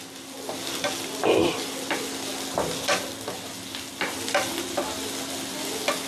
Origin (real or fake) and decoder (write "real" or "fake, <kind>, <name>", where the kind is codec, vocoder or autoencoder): real